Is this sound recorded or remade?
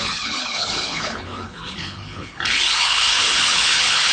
remade